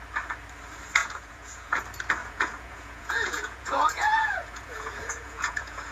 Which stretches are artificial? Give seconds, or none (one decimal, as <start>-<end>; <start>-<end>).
1.0-1.8; 2.2-5.9